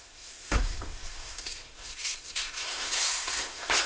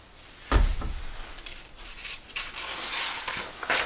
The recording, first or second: second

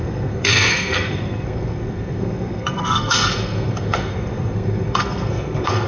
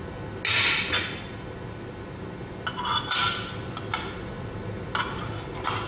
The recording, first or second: second